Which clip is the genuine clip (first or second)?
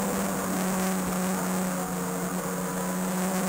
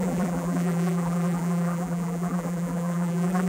first